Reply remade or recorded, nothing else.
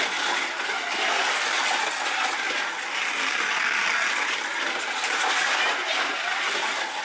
recorded